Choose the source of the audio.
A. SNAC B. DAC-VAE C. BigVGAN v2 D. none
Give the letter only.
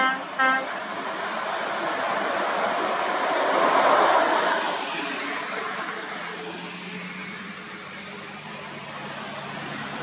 D